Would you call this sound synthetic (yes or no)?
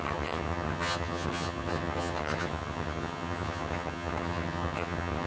yes